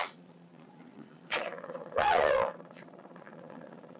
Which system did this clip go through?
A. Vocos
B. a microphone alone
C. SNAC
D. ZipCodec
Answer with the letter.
A